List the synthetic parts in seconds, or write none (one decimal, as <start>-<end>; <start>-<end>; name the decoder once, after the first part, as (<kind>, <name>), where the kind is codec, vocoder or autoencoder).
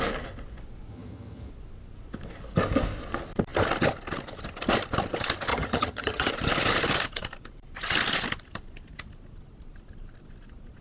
0.9-1.5 (vocoder, HiFi-GAN); 5.5-6.3